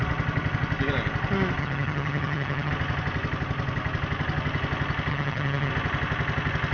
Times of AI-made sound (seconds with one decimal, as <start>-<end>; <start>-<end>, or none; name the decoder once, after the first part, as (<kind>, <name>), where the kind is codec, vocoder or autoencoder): 1.6-2.7 (vocoder, HiFi-GAN); 5.1-5.7